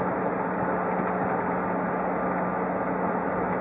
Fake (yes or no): no